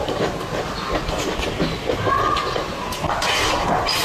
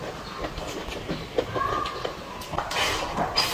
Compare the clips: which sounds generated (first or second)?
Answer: second